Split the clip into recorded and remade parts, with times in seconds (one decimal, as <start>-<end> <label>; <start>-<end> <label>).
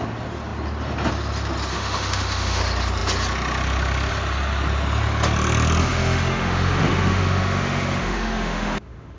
0.0-1.7 recorded; 1.7-2.6 remade; 2.6-5.8 recorded; 5.8-9.2 remade